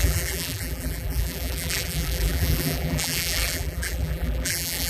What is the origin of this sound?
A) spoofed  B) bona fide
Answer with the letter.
A